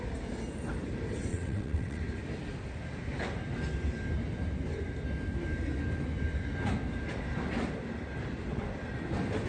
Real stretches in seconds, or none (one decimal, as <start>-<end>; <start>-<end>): 0.0-1.3; 2.0-9.5